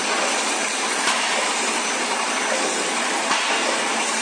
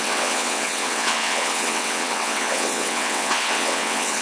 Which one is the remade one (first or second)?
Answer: second